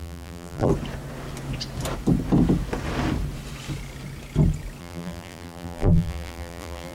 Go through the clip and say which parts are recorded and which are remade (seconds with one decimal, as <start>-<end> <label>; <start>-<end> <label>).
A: 0.0-0.7 remade; 0.7-4.8 recorded; 4.8-6.9 remade